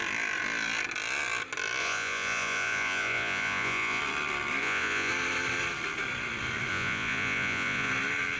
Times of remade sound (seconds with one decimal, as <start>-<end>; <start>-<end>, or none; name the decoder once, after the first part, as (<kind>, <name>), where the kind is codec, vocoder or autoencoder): 1.8-4.0 (vocoder, Vocos); 4.6-5.1; 6.7-7.9